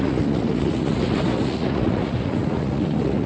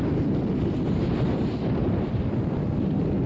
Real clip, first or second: second